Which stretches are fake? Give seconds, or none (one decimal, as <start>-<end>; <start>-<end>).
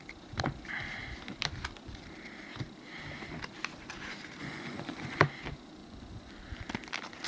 4.4-5.2; 5.8-6.3